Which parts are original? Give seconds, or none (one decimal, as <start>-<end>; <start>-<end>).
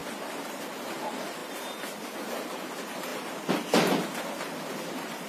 0.0-5.3